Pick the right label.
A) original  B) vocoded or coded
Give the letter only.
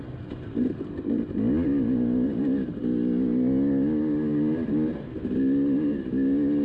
A